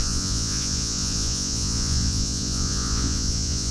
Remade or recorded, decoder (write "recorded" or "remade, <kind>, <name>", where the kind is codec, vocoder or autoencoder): remade, vocoder, Vocos